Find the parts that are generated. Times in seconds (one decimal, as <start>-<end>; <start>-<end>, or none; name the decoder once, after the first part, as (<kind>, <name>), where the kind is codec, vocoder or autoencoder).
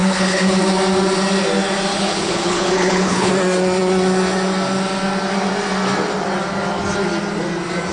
0.0-0.6 (codec, HILCodec); 1.9-3.3